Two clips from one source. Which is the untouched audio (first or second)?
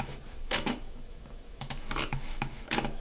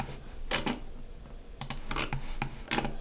second